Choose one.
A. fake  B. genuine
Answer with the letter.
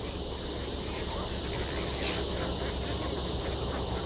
B